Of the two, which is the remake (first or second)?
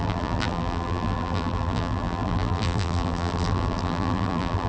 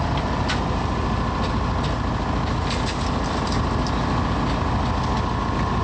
first